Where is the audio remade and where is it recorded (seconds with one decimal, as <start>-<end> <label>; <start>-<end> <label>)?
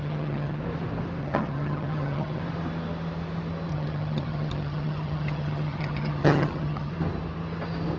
0.0-0.6 remade; 0.6-1.2 recorded; 1.2-2.4 remade; 2.4-3.7 recorded; 3.7-6.9 remade; 6.9-8.0 recorded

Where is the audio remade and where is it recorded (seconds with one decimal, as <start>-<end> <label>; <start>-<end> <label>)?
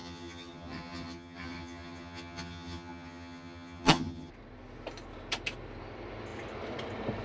0.0-4.3 remade; 4.3-7.2 recorded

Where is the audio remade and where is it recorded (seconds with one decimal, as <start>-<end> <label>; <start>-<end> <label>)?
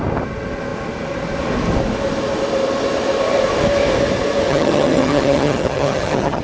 0.0-4.5 recorded; 4.5-6.4 remade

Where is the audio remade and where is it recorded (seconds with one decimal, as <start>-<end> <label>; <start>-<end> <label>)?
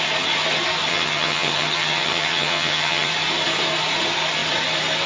0.0-0.9 recorded; 0.9-3.1 remade; 3.1-5.1 recorded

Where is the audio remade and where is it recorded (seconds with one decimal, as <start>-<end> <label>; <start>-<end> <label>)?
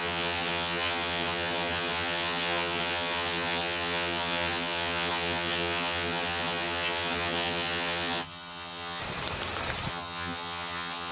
0.0-9.0 remade; 9.0-9.9 recorded; 9.9-11.1 remade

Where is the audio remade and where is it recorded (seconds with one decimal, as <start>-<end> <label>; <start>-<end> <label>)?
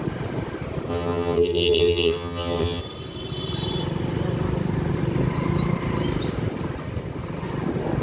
0.0-0.9 recorded; 0.9-2.8 remade; 2.8-8.0 recorded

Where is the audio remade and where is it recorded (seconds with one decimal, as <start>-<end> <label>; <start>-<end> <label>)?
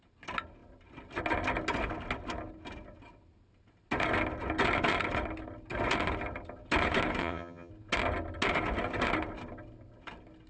0.0-7.2 recorded; 7.2-7.7 remade; 7.7-10.5 recorded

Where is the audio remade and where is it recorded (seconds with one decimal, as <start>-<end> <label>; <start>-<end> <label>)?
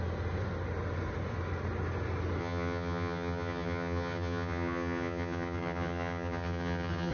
0.0-2.4 recorded; 2.4-7.1 remade